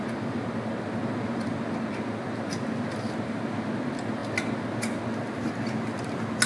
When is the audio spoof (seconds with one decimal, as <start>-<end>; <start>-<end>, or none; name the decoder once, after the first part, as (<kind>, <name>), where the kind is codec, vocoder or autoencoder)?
none